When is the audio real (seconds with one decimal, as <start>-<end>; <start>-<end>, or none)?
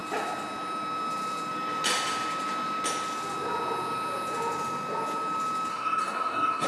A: 0.0-5.7